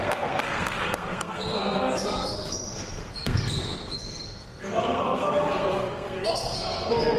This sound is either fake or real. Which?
fake